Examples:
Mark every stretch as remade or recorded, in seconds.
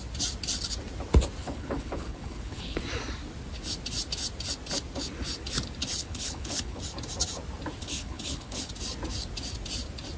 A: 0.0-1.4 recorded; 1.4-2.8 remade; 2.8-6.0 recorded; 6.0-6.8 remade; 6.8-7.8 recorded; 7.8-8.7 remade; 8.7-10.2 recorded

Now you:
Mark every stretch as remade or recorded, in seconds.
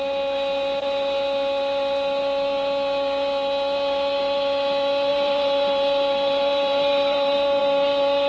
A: 0.0-5.1 recorded; 5.1-7.6 remade; 7.6-8.3 recorded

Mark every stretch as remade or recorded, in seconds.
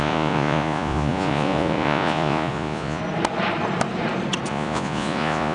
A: 0.0-3.0 remade; 3.0-4.5 recorded; 4.5-5.5 remade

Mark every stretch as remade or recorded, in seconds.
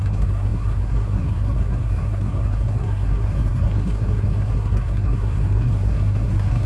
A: 0.0-6.7 remade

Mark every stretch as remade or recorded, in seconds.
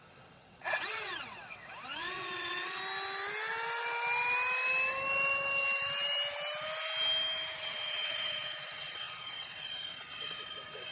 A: 0.0-2.8 remade; 2.8-7.6 recorded; 7.6-10.9 remade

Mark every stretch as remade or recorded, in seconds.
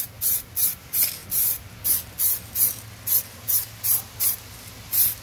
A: 0.0-5.2 recorded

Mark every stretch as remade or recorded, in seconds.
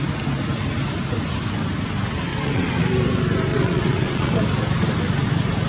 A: 0.0-2.3 recorded; 2.3-2.8 remade; 2.8-3.5 recorded; 3.5-4.4 remade; 4.4-5.7 recorded